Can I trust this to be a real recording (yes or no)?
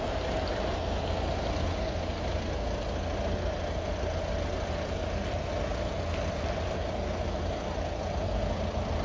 yes